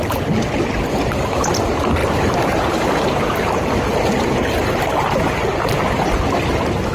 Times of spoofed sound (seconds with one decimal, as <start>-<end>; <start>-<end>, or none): 2.0-3.7